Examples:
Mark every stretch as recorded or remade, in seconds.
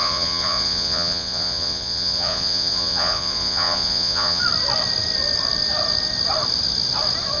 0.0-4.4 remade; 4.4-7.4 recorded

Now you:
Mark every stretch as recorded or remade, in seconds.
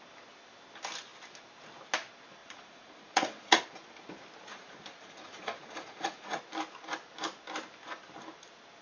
0.0-2.4 recorded; 2.4-3.6 remade; 3.6-4.5 recorded; 4.5-6.4 remade; 6.4-8.8 recorded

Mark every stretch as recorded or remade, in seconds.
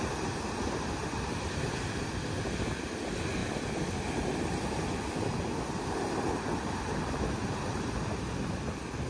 0.0-9.1 recorded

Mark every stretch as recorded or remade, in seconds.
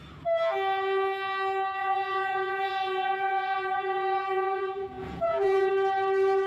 0.0-1.8 recorded; 1.8-5.7 remade; 5.7-6.5 recorded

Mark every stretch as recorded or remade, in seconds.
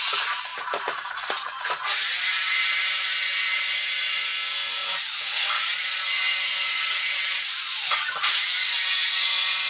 0.0-4.3 remade; 4.3-5.1 recorded; 5.1-9.7 remade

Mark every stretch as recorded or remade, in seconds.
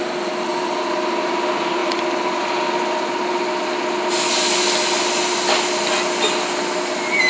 0.0-7.3 recorded